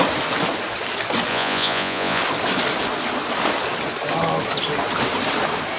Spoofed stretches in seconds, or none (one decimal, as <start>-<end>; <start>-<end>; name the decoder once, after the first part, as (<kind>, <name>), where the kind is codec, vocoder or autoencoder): 1.3-2.2 (vocoder, Vocos)